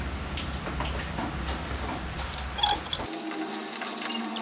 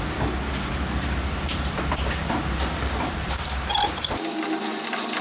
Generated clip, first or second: second